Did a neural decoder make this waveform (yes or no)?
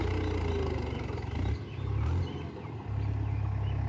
no